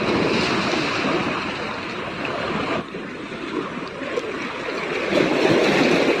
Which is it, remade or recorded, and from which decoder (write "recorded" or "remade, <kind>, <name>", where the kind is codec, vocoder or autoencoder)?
recorded